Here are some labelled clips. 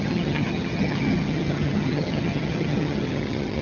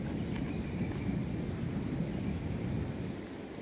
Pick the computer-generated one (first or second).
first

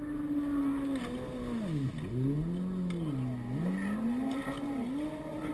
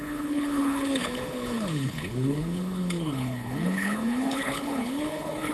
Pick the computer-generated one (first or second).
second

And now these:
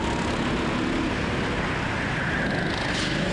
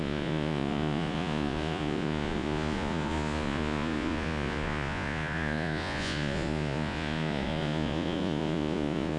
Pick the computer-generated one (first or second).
second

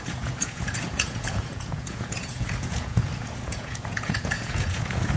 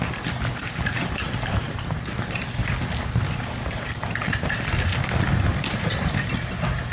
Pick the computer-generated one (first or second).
first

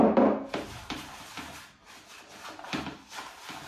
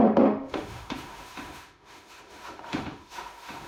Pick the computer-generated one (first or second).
second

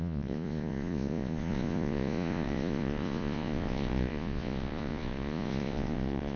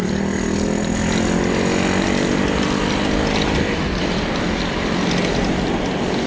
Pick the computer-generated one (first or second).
first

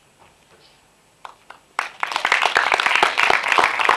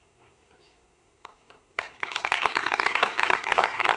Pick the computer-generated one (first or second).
second